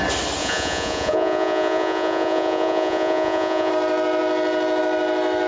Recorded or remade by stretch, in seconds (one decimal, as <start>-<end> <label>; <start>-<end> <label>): 0.0-0.4 recorded; 0.4-3.7 remade; 3.7-5.5 recorded